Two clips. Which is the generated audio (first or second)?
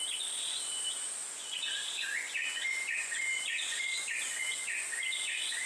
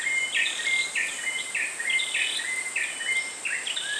first